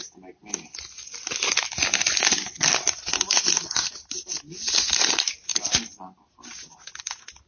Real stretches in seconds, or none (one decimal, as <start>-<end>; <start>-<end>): 0.0-3.8; 4.4-5.5; 6.9-7.5